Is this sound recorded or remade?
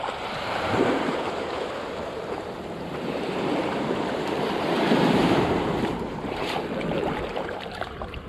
remade